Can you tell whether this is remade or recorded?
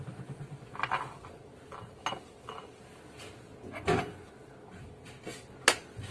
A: recorded